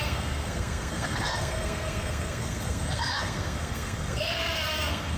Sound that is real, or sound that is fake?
fake